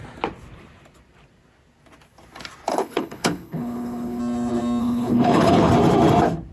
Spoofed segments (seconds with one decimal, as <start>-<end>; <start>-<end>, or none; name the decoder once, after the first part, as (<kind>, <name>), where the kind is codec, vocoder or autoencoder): 2.7-4.2 (codec, HILCodec); 4.8-5.7